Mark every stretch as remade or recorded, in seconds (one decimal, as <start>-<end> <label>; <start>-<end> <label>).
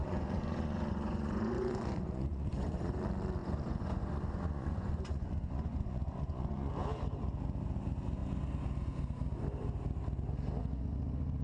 0.0-3.0 remade; 3.0-3.4 recorded; 3.4-6.7 remade; 6.7-11.4 recorded